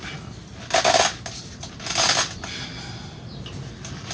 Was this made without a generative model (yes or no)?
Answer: yes